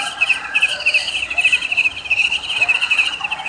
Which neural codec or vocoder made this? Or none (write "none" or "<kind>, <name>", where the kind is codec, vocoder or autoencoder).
vocoder, BigVGAN v2